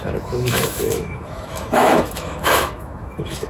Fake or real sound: fake